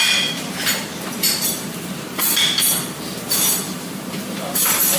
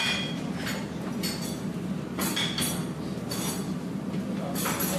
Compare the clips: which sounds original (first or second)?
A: second